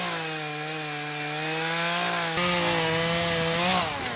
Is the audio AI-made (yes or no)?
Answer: no